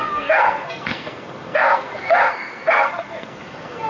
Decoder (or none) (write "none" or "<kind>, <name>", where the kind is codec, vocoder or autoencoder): codec, SNAC